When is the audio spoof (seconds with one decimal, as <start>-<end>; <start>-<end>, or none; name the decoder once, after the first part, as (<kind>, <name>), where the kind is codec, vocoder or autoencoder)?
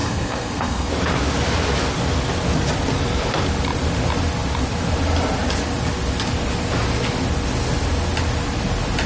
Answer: 0.0-0.9 (codec, SNAC)